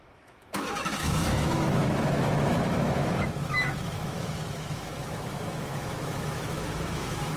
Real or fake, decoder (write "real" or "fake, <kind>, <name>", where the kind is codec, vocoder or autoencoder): fake, autoencoder, DAC-VAE